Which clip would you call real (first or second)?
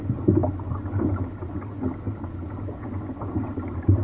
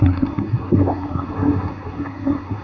first